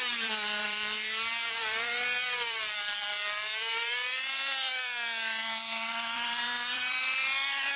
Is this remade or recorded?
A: remade